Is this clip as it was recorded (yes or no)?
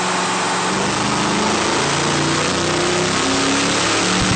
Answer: yes